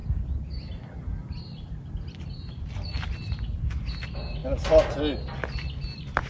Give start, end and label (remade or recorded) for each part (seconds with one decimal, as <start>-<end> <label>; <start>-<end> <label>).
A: 0.0-6.3 recorded